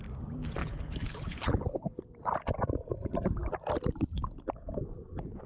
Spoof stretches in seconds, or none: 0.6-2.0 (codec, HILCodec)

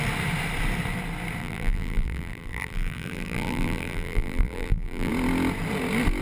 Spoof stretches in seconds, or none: 1.4-5.1 (vocoder, BigVGAN v2)

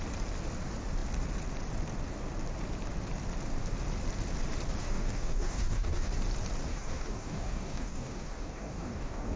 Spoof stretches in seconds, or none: 4.8-6.1 (codec, DAC); 6.7-9.4

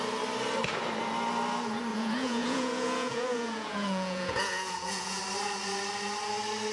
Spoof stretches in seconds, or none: 1.9-5.2 (vocoder, Vocos)

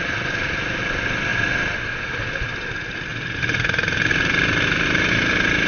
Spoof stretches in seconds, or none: 3.1-5.1 (vocoder, BigVGAN v2)

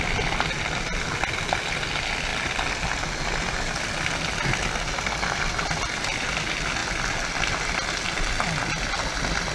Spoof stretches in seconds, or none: none

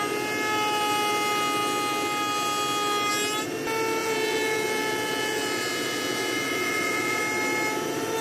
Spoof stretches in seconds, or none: 4.0-7.2 (vocoder, Vocos)